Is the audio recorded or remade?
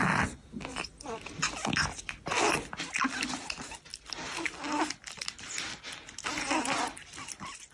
recorded